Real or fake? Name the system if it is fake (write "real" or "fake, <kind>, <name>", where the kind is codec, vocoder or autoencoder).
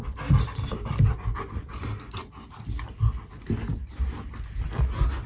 real